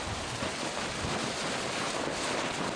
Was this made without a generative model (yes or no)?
yes